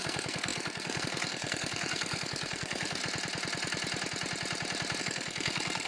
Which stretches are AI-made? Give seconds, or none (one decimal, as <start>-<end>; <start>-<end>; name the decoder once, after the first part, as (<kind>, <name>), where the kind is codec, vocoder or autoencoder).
0.0-3.0 (codec, SNAC); 5.0-5.9